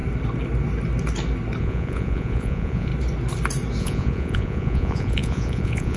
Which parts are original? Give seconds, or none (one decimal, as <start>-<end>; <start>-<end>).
0.0-1.6; 2.9-3.8